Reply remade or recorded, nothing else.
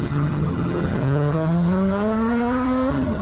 remade